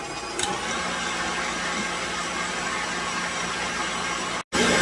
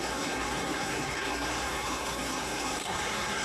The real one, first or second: first